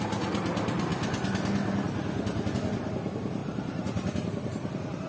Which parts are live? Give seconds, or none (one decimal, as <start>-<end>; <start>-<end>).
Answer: 0.0-3.4